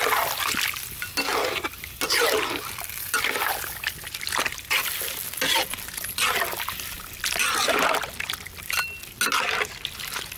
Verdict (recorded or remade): recorded